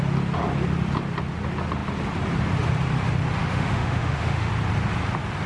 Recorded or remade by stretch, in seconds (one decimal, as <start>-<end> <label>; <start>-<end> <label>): 0.0-3.4 recorded; 3.4-4.5 remade; 4.5-5.5 recorded

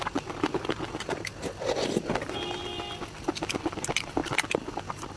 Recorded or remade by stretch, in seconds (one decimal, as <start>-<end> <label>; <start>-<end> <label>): 0.0-5.2 recorded

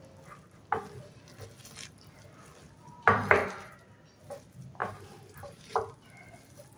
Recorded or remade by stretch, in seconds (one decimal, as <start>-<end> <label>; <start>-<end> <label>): 0.0-4.8 recorded; 4.8-5.8 remade; 5.8-6.8 recorded

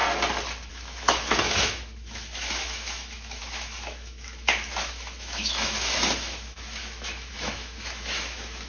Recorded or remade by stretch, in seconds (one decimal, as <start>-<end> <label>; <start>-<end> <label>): 0.0-0.7 recorded; 0.7-8.7 remade